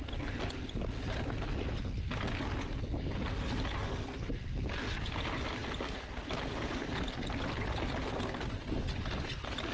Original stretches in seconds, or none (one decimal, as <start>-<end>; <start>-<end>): 0.0-9.7